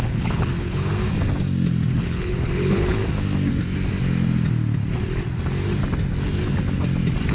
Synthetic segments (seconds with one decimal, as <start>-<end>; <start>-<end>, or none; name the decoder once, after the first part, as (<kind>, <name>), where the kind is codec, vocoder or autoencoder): 0.0-0.9 (codec, HILCodec); 2.0-3.0